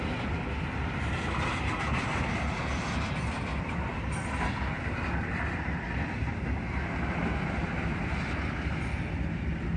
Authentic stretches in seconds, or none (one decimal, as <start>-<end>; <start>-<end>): 0.0-9.8